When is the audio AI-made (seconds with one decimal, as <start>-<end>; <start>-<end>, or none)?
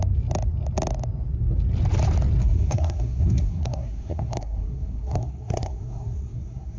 2.4-6.8